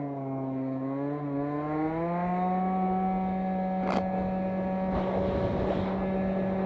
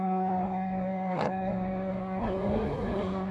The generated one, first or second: second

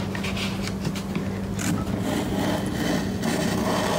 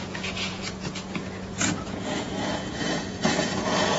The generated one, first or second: second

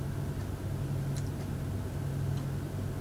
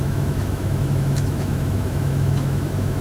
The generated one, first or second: second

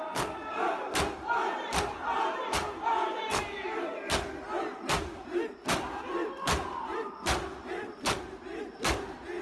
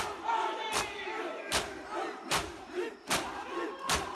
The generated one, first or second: second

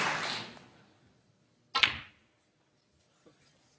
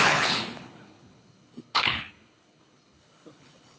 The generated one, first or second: second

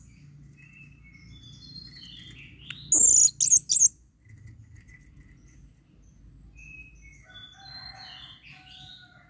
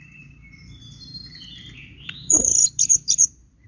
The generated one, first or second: second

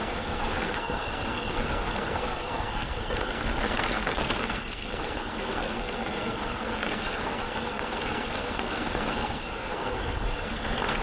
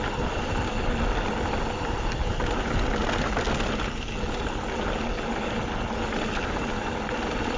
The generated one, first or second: first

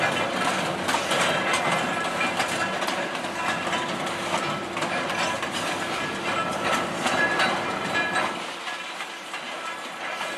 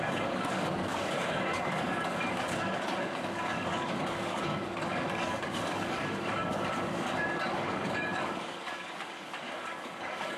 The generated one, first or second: second